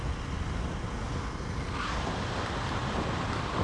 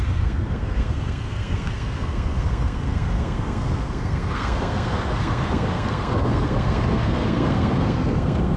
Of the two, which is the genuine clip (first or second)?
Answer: first